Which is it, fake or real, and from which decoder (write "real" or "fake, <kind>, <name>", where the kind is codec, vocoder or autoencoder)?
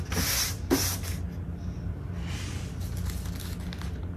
real